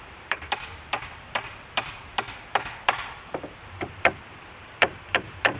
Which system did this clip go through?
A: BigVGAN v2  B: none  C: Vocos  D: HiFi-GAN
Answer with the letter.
A